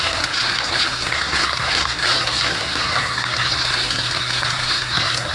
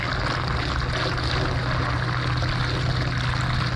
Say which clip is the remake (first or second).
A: first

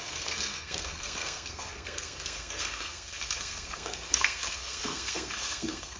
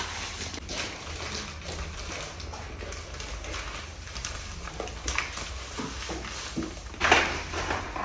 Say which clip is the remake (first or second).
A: first